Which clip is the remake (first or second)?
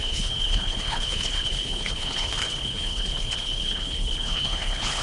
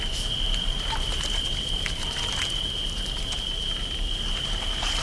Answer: first